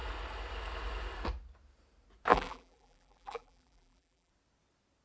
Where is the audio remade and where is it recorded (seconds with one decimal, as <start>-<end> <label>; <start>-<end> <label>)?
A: 0.0-2.3 recorded; 2.3-4.3 remade; 4.3-5.0 recorded